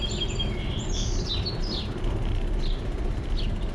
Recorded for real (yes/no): yes